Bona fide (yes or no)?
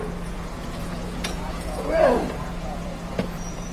no